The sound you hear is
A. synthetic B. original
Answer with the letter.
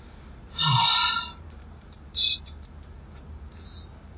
A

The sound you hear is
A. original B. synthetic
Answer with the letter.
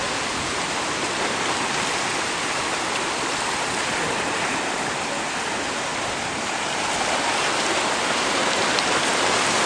A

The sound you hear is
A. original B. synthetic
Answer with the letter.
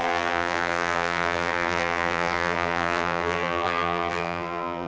B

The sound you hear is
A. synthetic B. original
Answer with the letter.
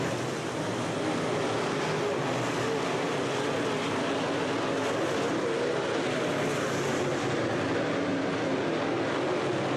B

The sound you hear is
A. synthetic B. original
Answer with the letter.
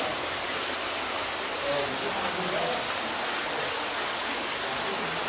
B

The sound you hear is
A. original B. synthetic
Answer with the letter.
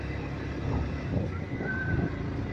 A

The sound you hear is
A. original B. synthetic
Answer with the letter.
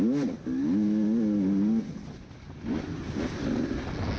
A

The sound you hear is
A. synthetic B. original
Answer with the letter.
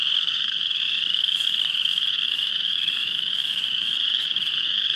A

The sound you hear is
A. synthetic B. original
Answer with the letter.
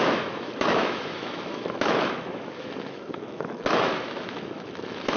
A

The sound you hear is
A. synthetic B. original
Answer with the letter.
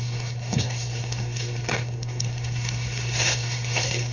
A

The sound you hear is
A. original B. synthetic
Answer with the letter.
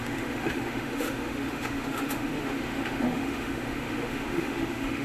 B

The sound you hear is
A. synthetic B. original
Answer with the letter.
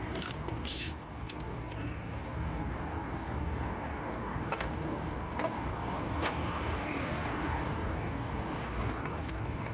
A